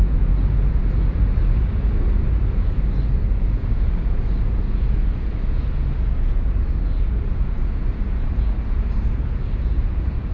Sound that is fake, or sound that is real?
fake